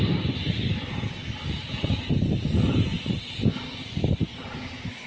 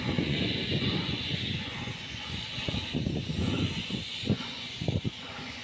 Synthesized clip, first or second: second